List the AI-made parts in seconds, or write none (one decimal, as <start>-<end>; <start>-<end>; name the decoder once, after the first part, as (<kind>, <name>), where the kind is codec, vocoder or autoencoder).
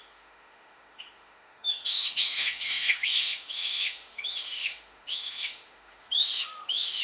0.0-7.0 (autoencoder, DAC-VAE)